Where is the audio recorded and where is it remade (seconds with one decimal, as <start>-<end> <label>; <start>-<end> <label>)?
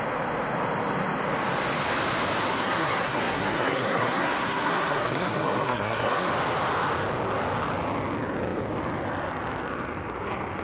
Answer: 0.0-2.5 recorded; 2.5-6.3 remade; 6.3-10.6 recorded